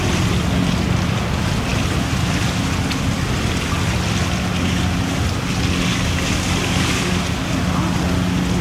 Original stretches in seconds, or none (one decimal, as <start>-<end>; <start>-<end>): 0.0-5.9; 7.2-8.6